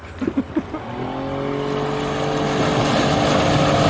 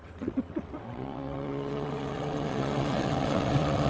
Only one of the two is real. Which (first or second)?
first